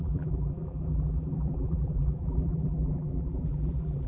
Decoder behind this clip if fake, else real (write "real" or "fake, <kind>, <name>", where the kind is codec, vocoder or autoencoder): fake, vocoder, BigVGAN v2